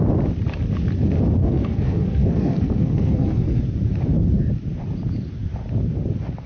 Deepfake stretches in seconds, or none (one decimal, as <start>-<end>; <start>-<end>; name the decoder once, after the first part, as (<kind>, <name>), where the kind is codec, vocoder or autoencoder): 1.4-3.6 (codec, SNAC)